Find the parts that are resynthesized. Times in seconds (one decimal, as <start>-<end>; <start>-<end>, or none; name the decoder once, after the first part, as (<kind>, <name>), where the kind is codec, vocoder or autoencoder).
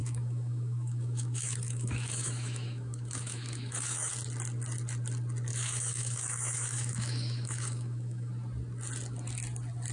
0.0-4.1 (autoencoder, DAC-VAE); 5.5-8.3